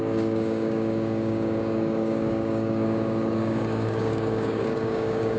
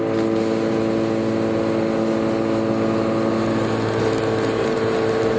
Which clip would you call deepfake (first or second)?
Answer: first